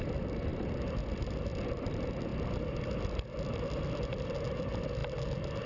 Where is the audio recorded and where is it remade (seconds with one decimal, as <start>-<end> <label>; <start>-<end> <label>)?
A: 0.0-5.7 recorded